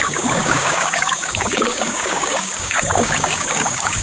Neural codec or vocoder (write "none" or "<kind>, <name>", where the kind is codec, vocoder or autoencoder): codec, DAC